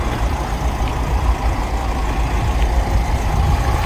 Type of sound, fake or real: real